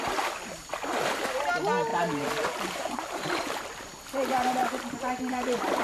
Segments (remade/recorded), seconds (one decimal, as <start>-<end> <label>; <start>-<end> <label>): 0.0-1.9 recorded; 1.9-3.7 remade; 3.7-4.6 recorded; 4.6-5.8 remade